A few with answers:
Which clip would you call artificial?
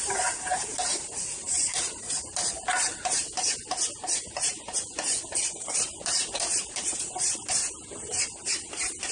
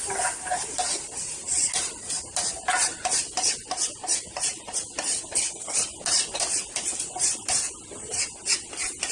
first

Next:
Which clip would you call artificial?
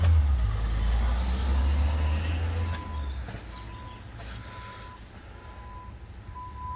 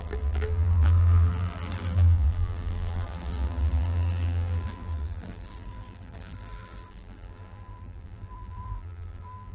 second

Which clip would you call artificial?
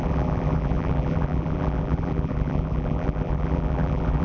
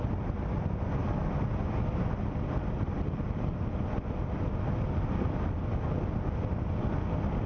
first